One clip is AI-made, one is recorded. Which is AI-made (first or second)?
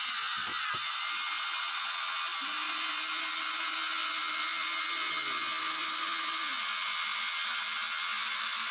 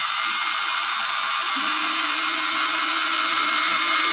second